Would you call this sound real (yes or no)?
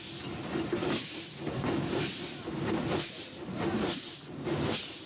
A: yes